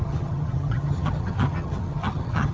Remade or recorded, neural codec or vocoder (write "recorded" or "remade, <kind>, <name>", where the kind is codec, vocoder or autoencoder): remade, vocoder, HiFi-GAN